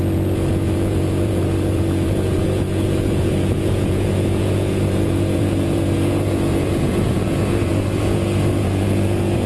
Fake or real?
fake